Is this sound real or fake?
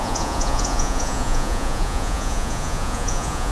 fake